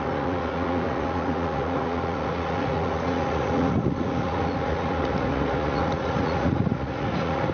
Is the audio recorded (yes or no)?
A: no